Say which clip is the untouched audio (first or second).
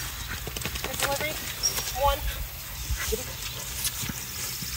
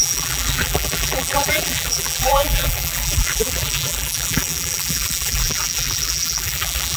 first